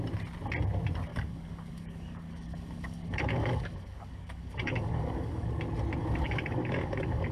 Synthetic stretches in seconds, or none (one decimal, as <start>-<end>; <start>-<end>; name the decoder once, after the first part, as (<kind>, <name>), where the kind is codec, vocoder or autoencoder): 1.1-5.5 (codec, DAC); 6.0-7.3